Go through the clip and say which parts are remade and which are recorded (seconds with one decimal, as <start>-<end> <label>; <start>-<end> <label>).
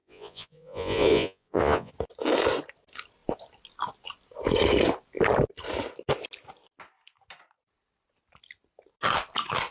0.0-1.9 remade; 1.9-9.7 recorded